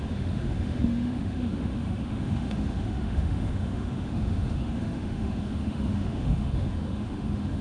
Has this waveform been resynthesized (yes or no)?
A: yes